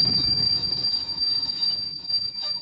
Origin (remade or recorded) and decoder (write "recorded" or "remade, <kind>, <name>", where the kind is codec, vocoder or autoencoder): remade, codec, DAC